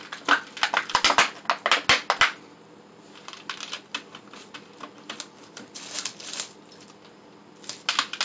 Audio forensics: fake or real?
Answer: real